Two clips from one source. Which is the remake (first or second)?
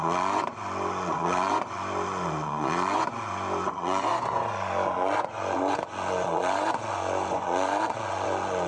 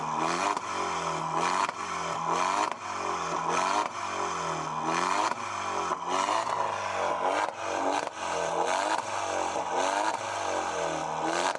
first